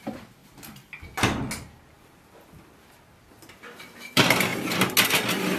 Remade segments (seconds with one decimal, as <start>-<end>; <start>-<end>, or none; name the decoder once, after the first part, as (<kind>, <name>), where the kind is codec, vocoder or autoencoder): 0.0-0.4 (vocoder, BigVGAN v2); 3.5-4.5